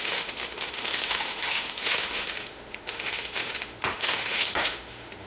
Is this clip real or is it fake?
fake